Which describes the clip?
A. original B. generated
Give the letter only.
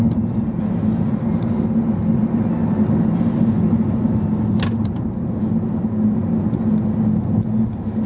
A